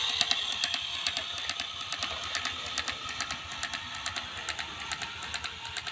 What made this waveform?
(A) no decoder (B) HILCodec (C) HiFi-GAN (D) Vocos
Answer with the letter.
A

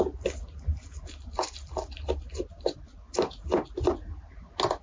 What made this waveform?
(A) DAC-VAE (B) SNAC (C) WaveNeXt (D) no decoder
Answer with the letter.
D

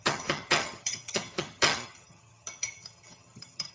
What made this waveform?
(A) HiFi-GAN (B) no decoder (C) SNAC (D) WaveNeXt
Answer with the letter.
A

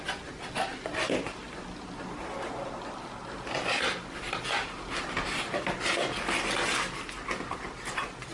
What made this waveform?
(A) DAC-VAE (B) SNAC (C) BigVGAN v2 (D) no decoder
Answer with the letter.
D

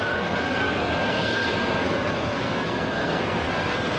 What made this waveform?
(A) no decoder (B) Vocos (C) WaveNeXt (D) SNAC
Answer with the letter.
D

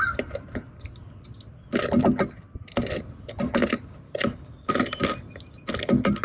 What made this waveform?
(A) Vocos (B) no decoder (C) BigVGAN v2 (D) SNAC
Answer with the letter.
B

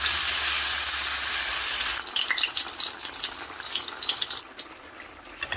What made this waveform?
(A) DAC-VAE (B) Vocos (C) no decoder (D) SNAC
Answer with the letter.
C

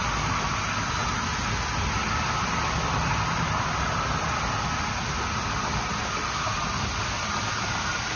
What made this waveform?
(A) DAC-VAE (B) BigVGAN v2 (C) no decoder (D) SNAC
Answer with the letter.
C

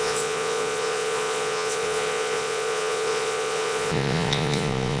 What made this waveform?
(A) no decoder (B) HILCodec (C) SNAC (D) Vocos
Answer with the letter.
D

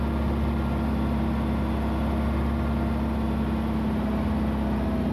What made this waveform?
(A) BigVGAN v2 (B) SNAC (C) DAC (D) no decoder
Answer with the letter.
D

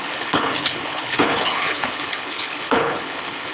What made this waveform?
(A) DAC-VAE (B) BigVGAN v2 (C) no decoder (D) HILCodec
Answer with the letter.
D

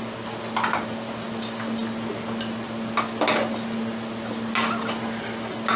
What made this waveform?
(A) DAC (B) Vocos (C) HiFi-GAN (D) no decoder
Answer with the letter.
D